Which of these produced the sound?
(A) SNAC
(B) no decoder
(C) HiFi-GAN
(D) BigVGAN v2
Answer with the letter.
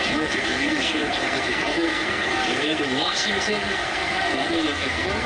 A